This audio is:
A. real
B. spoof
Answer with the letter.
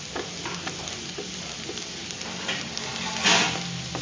A